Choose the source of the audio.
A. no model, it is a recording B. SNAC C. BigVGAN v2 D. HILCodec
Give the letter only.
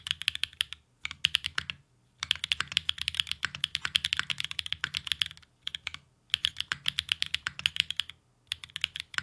A